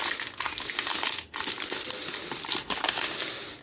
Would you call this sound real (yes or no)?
yes